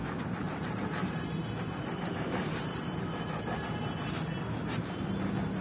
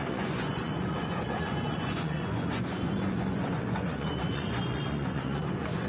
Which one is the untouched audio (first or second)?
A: first